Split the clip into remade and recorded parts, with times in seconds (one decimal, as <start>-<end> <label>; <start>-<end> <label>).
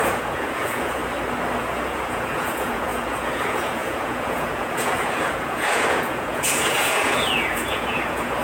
0.0-1.0 remade; 1.0-1.6 recorded; 1.6-8.4 remade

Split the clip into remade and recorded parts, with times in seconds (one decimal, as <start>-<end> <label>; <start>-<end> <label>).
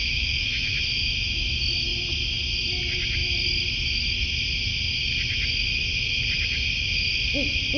0.0-0.8 remade; 0.8-7.8 recorded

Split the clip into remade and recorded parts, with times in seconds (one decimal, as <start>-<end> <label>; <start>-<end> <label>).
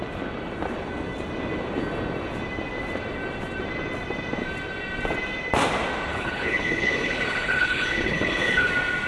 0.0-6.1 recorded; 6.1-8.7 remade; 8.7-9.1 recorded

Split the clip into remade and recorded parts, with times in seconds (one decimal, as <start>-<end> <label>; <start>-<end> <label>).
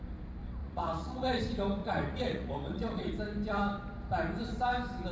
0.0-0.6 recorded; 0.6-1.4 remade; 1.4-1.8 recorded; 1.8-3.1 remade; 3.1-5.1 recorded